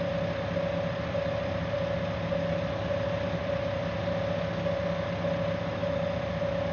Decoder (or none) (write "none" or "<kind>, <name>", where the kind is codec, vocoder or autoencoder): none